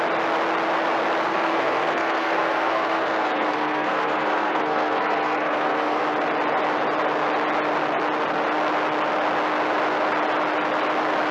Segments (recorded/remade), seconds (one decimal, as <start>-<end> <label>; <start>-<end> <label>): 0.0-1.3 recorded; 1.3-6.0 remade; 6.0-11.3 recorded